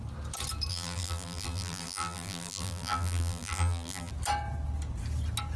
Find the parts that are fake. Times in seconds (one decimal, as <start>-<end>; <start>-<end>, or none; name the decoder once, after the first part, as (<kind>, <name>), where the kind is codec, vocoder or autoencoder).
0.7-4.1 (vocoder, BigVGAN v2)